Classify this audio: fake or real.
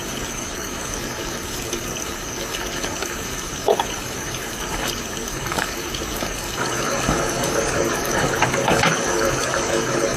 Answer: fake